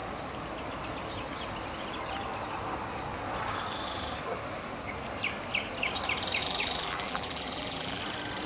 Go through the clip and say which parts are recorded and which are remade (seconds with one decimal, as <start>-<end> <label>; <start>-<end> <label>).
0.0-6.4 recorded; 6.4-8.0 remade; 8.0-8.5 recorded

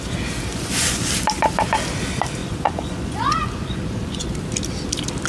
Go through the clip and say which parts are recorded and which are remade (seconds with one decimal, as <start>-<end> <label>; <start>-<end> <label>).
0.0-0.5 recorded; 0.5-1.1 remade; 1.1-2.4 recorded; 2.4-4.3 remade; 4.3-5.3 recorded

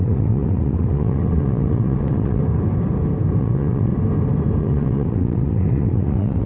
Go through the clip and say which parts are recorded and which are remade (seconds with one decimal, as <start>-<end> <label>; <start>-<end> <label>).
0.0-2.4 remade; 2.4-3.4 recorded; 3.4-3.9 remade; 3.9-4.6 recorded; 4.6-6.5 remade

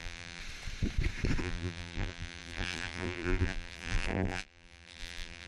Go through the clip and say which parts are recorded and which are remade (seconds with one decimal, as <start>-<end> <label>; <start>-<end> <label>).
0.0-0.4 remade; 0.4-1.4 recorded; 1.4-5.5 remade

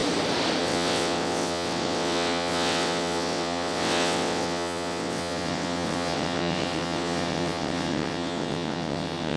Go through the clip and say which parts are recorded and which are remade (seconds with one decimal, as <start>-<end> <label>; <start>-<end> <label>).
0.0-0.6 recorded; 0.6-9.4 remade